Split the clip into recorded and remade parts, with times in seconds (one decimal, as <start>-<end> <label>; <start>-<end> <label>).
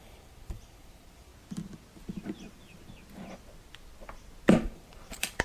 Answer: 0.0-1.3 remade; 1.3-4.5 recorded; 4.5-5.4 remade